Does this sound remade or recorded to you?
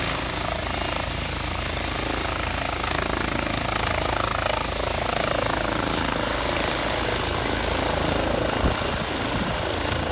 recorded